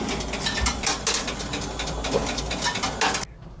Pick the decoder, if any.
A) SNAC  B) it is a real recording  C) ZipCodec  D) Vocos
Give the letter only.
B